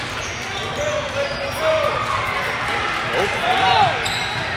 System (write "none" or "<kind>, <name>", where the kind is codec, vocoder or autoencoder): none